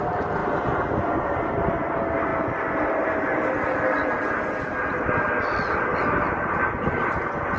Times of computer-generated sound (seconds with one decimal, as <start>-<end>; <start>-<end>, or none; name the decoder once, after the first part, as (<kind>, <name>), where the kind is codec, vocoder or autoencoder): none